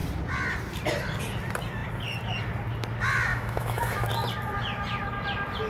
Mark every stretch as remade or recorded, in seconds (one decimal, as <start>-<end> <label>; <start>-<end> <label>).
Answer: 0.0-3.3 recorded; 3.3-4.1 remade; 4.1-5.7 recorded